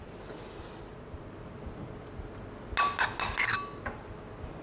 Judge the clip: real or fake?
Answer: real